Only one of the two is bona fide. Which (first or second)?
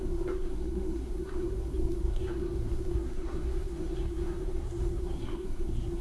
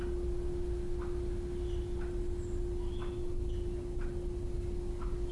second